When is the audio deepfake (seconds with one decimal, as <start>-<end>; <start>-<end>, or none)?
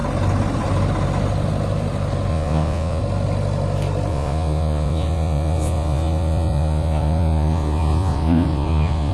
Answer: 2.3-3.0; 4.1-9.1